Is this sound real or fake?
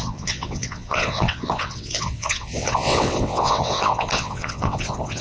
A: fake